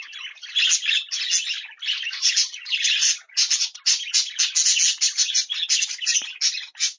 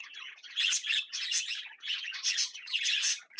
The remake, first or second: second